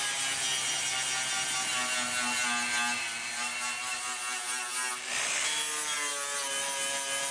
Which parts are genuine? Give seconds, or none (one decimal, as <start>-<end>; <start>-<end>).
0.0-7.3